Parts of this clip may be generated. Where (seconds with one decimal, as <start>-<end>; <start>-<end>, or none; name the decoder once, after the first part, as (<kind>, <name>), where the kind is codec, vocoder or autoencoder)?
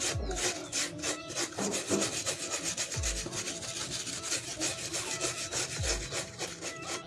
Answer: none